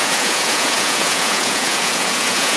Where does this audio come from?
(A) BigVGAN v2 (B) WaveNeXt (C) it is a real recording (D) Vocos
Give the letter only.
D